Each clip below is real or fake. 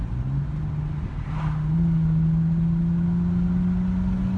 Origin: real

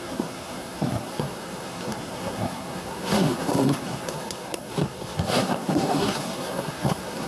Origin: fake